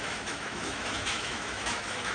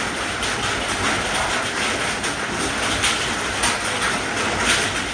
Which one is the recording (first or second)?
second